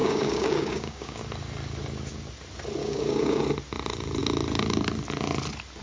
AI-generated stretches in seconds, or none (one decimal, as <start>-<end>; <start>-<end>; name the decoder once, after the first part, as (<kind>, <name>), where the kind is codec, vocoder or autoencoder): 0.0-1.2 (codec, DAC); 2.8-3.4